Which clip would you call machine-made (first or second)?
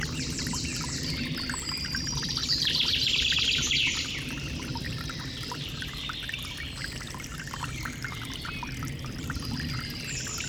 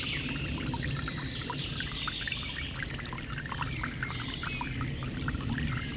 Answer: first